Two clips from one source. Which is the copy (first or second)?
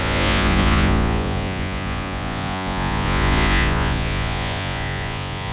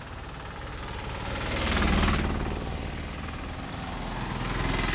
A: first